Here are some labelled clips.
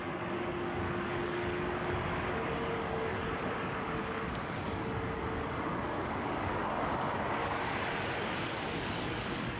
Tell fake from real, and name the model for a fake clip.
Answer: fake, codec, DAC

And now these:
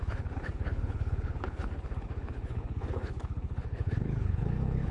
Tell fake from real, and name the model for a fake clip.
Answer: fake, codec, HILCodec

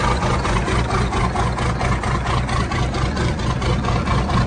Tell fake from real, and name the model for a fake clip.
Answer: fake, vocoder, Vocos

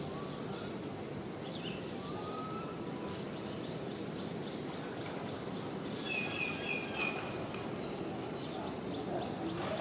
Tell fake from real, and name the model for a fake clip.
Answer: real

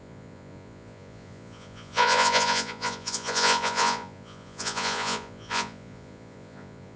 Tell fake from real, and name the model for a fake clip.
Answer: fake, vocoder, Vocos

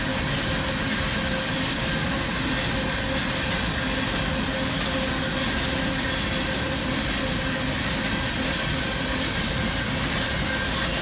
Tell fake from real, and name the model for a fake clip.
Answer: real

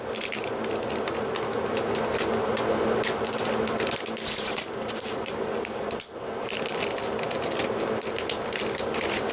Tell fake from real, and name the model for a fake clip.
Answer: real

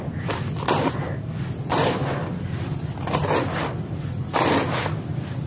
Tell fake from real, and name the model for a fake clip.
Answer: real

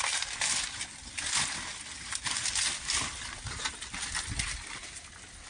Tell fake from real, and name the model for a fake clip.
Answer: real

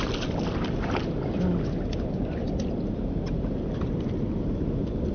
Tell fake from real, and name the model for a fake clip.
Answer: real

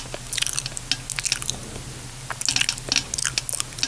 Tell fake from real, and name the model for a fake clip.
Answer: real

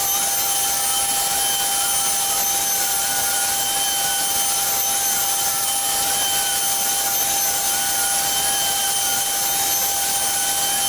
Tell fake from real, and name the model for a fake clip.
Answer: real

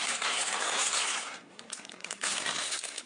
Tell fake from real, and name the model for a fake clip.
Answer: fake, codec, SNAC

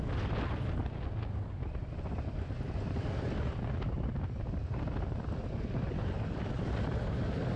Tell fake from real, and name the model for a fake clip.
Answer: real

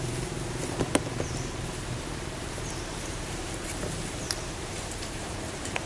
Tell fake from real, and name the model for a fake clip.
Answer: fake, vocoder, BigVGAN v2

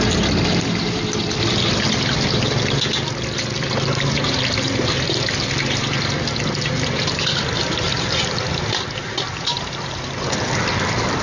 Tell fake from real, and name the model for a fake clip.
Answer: real